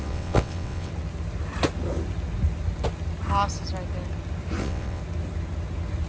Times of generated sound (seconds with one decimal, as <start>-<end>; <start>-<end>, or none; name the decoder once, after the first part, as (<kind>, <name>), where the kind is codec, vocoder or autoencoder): 0.0-0.9 (vocoder, WaveNeXt); 4.6-5.0